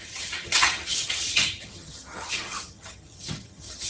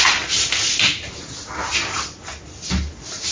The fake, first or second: first